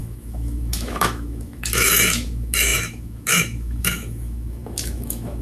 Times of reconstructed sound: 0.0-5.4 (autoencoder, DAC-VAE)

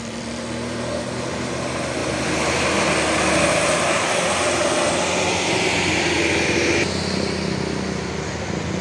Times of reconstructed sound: none

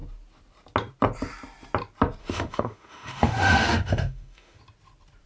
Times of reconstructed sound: 2.2-4.6 (autoencoder, DAC-VAE)